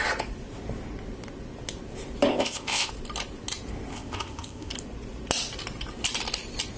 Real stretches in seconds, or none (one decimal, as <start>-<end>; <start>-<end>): 0.0-2.3; 2.9-3.9; 4.7-6.8